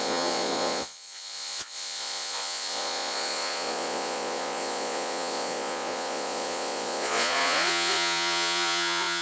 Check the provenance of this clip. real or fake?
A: fake